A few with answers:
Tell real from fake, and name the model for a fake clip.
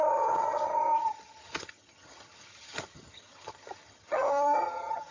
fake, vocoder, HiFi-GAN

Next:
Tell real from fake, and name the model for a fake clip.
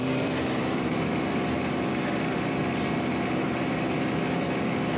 fake, vocoder, BigVGAN v2